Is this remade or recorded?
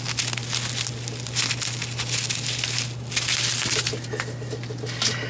recorded